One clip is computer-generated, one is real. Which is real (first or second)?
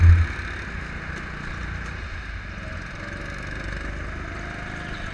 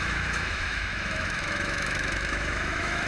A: first